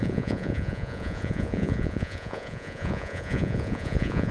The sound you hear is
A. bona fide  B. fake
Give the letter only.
B